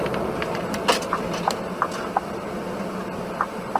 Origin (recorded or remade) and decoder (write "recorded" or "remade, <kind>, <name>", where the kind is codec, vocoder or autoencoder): recorded